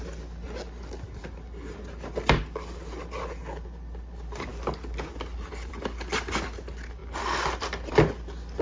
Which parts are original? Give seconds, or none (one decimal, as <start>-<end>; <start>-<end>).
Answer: 0.0-7.0; 7.9-8.6